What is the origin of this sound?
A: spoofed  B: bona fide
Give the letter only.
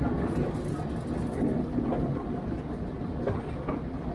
B